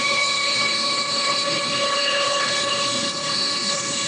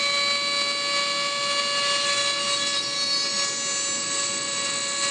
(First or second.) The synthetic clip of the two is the first